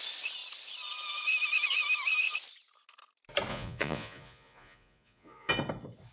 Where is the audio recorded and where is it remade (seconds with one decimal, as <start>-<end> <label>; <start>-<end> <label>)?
0.0-3.5 recorded; 3.5-5.5 remade; 5.5-6.1 recorded